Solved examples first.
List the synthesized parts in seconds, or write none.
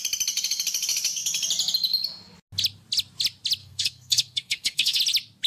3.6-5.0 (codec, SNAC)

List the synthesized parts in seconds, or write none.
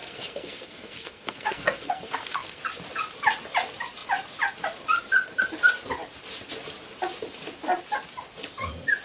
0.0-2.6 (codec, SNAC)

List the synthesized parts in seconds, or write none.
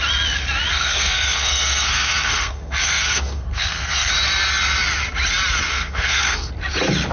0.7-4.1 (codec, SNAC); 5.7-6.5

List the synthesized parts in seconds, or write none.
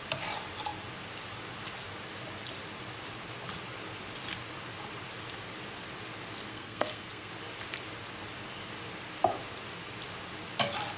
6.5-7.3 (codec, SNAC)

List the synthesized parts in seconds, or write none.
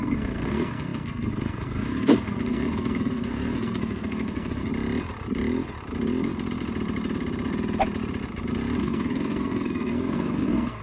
0.0-4.7 (codec, SNAC); 8.8-10.8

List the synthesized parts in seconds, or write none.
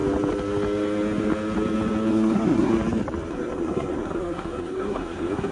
2.1-2.7 (codec, SNAC); 3.3-5.5